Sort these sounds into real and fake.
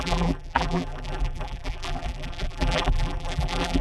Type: fake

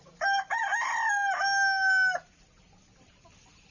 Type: real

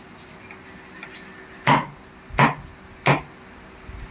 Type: real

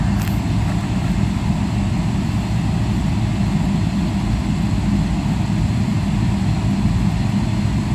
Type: real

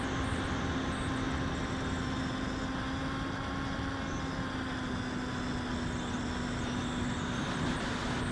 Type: real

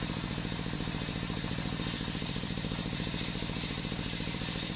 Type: fake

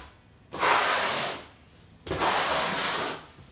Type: real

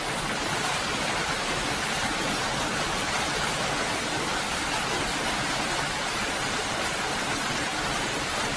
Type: fake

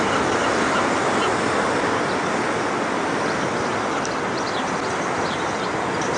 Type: real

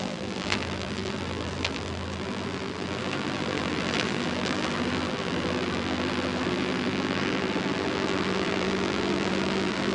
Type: fake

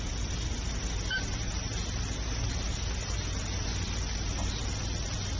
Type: real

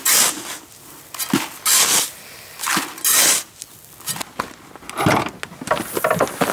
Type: real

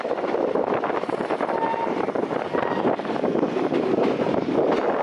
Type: real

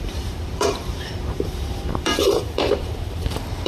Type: fake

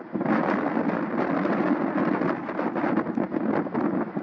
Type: real